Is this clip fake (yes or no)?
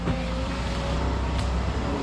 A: yes